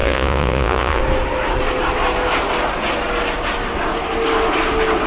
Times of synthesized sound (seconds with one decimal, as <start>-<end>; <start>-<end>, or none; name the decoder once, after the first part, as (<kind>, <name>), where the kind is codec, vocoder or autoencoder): 0.0-1.0 (vocoder, Vocos)

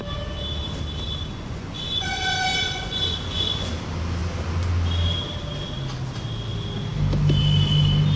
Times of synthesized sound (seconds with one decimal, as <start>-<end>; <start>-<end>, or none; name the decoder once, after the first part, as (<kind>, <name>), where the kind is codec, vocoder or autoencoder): 1.3-3.7 (vocoder, Vocos)

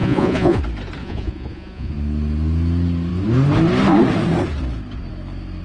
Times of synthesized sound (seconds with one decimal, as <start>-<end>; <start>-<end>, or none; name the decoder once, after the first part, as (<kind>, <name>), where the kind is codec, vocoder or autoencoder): 0.0-0.6 (vocoder, Vocos); 1.0-1.9

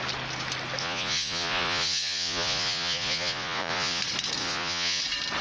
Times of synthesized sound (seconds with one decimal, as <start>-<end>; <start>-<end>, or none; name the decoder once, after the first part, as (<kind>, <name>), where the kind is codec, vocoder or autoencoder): 0.8-4.0 (vocoder, Vocos); 4.4-5.0